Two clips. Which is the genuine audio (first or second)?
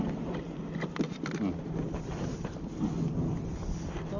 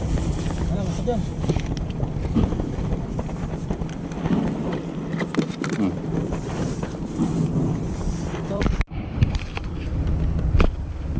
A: first